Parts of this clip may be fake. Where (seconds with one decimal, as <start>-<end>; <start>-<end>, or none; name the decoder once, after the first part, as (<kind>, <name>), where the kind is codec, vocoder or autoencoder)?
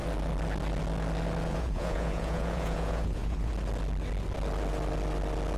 1.5-3.5 (vocoder, Vocos)